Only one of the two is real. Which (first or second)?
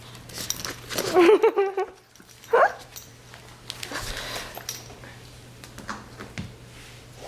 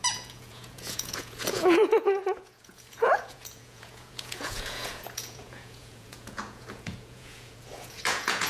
first